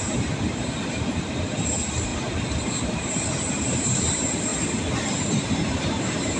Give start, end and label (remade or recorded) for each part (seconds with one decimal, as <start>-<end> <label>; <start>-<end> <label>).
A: 0.0-2.1 remade; 2.1-2.8 recorded; 2.8-4.5 remade; 4.5-5.7 recorded; 5.7-6.4 remade